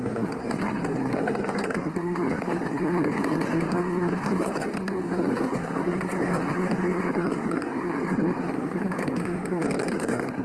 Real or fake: fake